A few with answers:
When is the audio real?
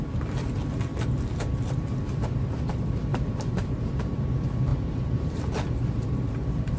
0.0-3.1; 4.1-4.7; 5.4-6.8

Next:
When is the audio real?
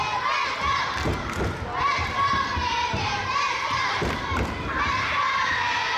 0.0-2.0; 4.4-6.0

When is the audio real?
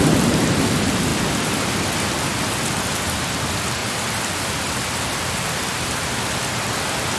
0.0-1.1; 1.9-3.8; 6.3-7.2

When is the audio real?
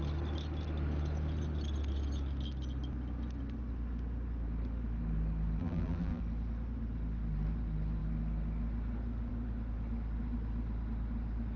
0.0-5.6; 6.2-11.6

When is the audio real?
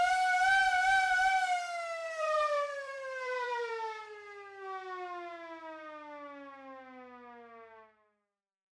0.0-2.0; 3.7-8.8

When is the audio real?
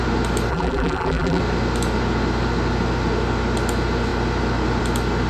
0.0-0.5; 1.4-5.3